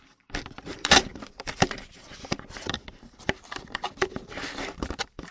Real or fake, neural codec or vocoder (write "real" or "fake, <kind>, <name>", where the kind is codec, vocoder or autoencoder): fake, vocoder, BigVGAN v2